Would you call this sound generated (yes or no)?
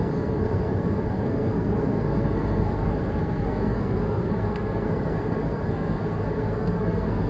yes